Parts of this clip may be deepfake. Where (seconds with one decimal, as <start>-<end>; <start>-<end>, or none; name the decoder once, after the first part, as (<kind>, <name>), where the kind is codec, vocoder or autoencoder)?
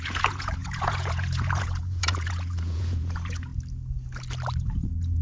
0.0-3.5 (vocoder, Vocos); 4.6-5.2